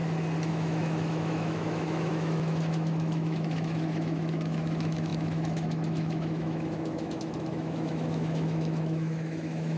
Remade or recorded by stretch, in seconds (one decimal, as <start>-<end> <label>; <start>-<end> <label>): 0.0-0.5 recorded; 0.5-9.8 remade